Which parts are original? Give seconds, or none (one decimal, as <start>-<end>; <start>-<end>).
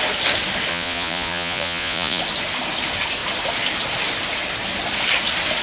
0.0-0.7; 2.2-5.6